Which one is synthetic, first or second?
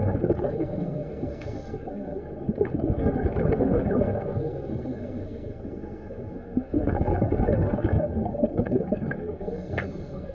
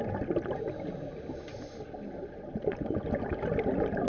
first